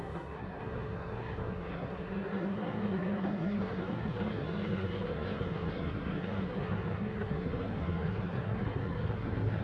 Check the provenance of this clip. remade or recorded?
remade